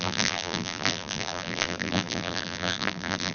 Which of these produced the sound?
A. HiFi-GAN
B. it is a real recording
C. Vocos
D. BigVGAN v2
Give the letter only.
D